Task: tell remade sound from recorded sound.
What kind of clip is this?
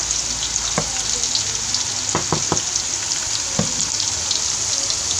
recorded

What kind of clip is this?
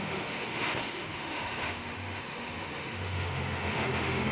remade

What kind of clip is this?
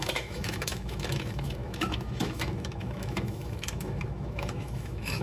remade